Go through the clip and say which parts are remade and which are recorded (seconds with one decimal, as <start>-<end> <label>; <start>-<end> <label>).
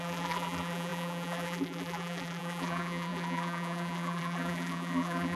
0.0-5.4 remade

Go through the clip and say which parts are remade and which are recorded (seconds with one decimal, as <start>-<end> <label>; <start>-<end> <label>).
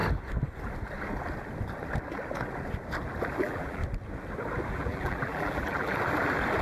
0.0-3.4 recorded; 3.4-3.8 remade; 3.8-4.7 recorded; 4.7-5.9 remade; 5.9-6.6 recorded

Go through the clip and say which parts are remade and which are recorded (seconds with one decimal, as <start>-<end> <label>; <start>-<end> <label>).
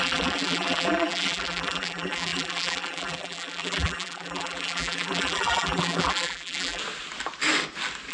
0.0-6.8 remade; 6.8-8.1 recorded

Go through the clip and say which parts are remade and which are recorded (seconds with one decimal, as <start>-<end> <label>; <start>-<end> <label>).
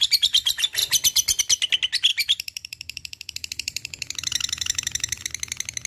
0.0-2.1 recorded; 2.1-5.2 remade; 5.2-5.9 recorded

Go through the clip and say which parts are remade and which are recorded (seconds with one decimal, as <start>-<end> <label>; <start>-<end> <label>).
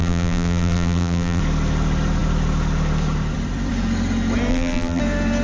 0.0-1.4 remade; 1.4-4.5 recorded; 4.5-5.0 remade; 5.0-5.4 recorded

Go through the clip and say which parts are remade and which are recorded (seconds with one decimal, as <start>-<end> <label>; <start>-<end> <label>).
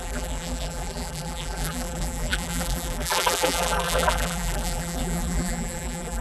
0.0-6.2 remade